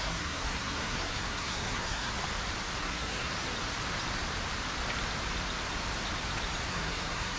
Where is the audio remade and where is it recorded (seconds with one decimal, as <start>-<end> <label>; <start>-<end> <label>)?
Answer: 0.0-2.1 remade; 2.1-2.8 recorded; 2.8-3.3 remade; 3.3-6.7 recorded; 6.7-7.4 remade